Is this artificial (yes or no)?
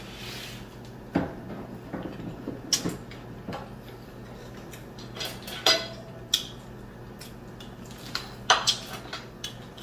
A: no